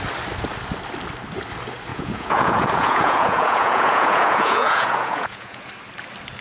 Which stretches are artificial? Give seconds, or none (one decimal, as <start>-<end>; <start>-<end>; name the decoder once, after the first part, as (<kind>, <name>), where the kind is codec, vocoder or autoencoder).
1.9-5.7 (vocoder, Vocos)